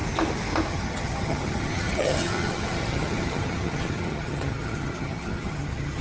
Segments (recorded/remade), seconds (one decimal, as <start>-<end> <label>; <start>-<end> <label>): 0.0-0.7 recorded; 0.7-6.0 remade